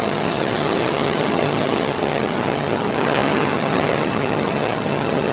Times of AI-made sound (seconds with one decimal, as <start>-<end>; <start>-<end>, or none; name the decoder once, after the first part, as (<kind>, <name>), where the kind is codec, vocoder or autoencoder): 0.0-5.3 (vocoder, HiFi-GAN)